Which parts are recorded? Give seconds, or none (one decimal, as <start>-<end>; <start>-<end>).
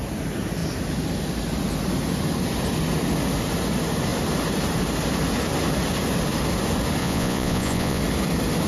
0.0-7.0; 8.0-8.7